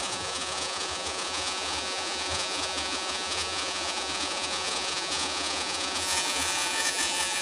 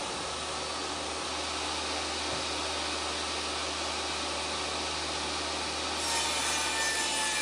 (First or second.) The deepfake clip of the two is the first